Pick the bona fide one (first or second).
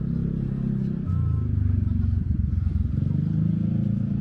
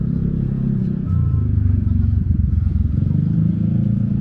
first